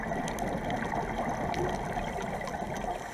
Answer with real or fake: real